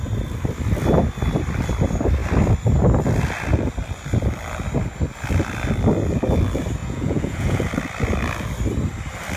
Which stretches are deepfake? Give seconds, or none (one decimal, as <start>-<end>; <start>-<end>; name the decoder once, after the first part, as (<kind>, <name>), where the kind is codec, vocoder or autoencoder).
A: 6.8-7.7 (vocoder, Vocos)